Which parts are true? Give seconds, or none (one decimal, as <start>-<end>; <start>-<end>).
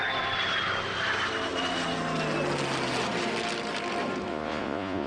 0.0-4.3